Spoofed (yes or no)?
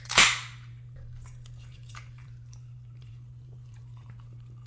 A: yes